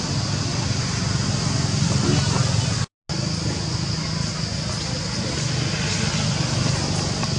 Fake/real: real